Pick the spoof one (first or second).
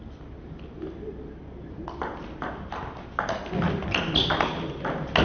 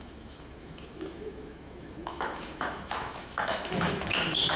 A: second